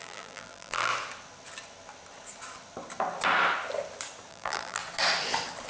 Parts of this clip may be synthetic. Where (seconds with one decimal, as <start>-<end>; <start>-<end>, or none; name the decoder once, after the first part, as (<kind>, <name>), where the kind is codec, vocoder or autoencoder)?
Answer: 0.0-0.9 (vocoder, BigVGAN v2); 4.3-4.8